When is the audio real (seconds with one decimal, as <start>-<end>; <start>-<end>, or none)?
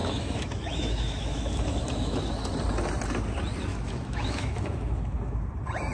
2.2-3.7; 5.5-5.9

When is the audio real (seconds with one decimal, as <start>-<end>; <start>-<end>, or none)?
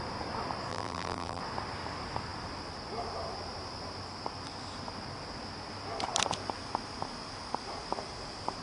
0.0-0.7; 1.4-8.6